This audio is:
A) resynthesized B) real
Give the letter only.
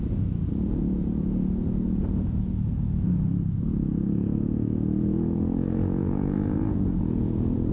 A